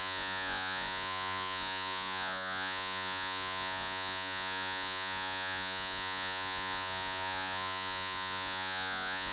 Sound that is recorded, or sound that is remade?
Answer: remade